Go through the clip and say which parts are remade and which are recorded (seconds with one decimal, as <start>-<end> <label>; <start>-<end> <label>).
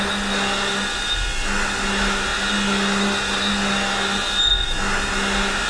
0.0-5.7 recorded